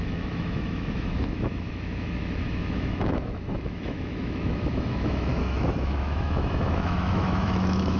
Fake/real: fake